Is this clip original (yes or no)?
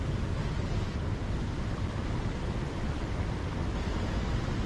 yes